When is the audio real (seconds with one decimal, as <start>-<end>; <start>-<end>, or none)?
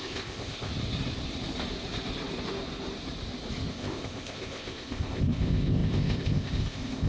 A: 0.7-3.7